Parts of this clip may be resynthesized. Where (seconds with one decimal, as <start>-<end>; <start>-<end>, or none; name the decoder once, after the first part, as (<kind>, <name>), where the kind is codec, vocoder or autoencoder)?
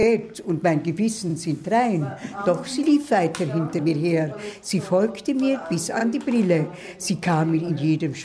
none